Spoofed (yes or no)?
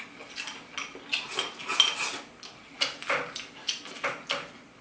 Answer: no